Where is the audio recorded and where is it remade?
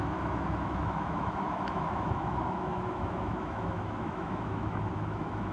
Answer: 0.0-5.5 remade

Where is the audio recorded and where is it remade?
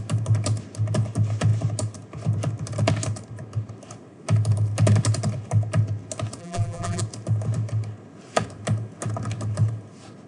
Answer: 0.0-6.4 recorded; 6.4-7.0 remade; 7.0-10.3 recorded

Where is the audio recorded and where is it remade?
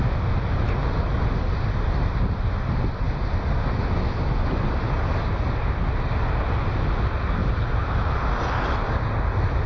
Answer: 0.0-0.8 recorded; 0.8-3.2 remade; 3.2-7.4 recorded; 7.4-9.7 remade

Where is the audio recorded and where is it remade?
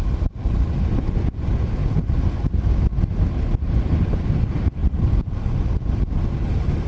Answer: 0.0-4.8 recorded; 4.8-6.1 remade; 6.1-6.9 recorded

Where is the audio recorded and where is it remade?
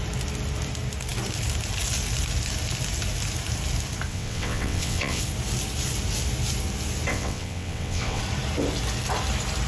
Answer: 0.0-4.1 recorded; 4.1-5.2 remade; 5.2-7.1 recorded; 7.1-8.2 remade; 8.2-9.7 recorded